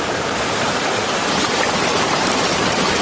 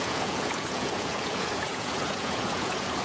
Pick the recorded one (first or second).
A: first